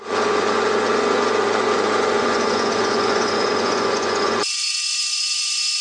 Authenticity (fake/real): fake